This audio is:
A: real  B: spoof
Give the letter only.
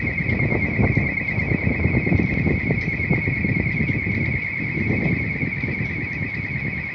A